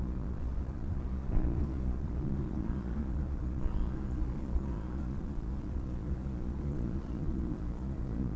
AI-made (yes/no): yes